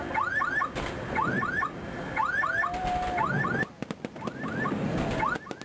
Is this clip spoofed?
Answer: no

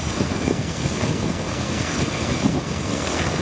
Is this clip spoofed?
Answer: yes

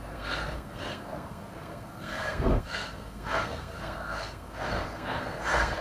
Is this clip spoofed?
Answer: yes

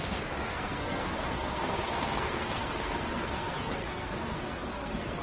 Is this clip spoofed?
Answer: yes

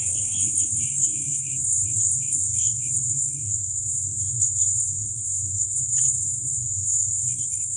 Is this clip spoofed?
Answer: yes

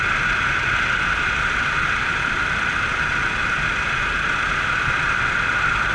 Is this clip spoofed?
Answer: no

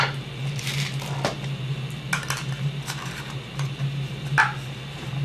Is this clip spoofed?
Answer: no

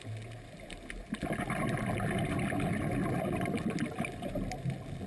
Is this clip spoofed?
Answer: no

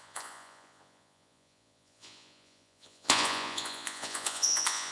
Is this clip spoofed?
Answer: yes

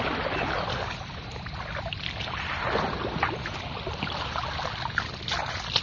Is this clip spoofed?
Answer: no